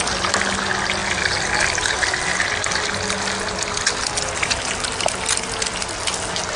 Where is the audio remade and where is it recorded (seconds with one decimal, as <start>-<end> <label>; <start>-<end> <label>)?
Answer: 0.0-6.6 recorded